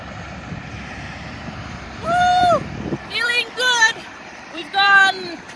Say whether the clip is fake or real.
fake